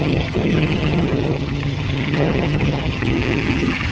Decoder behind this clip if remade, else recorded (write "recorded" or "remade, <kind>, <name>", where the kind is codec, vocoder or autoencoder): remade, vocoder, HiFi-GAN